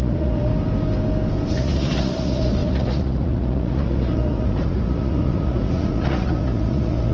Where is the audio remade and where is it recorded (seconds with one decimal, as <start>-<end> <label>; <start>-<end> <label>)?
0.0-0.5 remade; 0.5-1.5 recorded; 1.5-7.1 remade